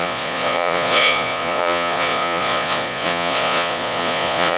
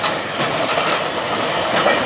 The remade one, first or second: first